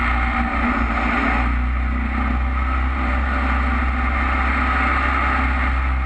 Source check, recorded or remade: recorded